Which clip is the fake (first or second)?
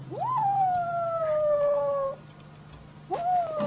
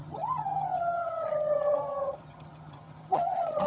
second